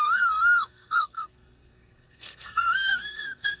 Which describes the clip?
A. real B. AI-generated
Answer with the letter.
B